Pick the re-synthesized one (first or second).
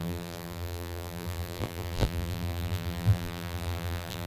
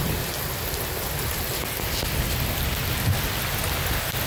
first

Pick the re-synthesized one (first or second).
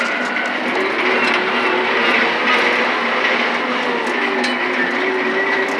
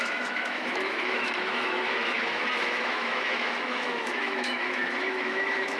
second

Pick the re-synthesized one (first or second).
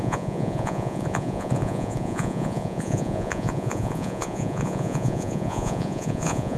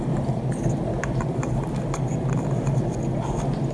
first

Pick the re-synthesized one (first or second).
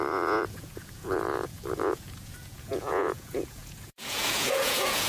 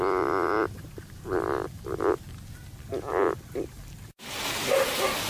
first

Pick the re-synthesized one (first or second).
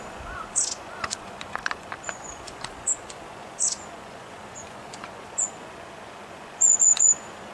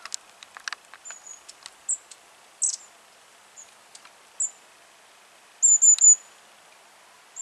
first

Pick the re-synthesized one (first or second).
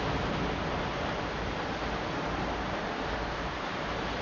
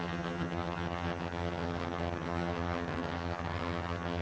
second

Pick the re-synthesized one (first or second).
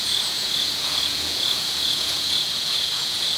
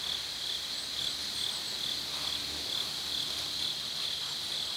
first